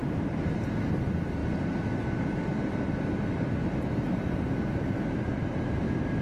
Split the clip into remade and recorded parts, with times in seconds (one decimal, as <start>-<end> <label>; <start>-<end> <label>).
0.0-0.9 remade; 0.9-1.4 recorded; 1.4-5.1 remade; 5.1-6.2 recorded